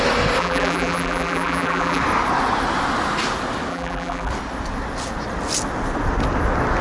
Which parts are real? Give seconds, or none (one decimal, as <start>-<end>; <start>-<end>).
0.0-0.4; 2.0-3.7; 4.3-6.8